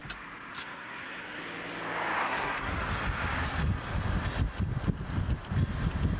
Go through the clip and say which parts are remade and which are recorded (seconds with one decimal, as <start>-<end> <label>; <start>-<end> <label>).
0.0-0.5 recorded; 0.5-1.4 remade; 1.4-2.2 recorded; 2.2-2.8 remade; 2.8-6.2 recorded